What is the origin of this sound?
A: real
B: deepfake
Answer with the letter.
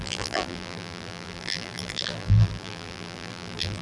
B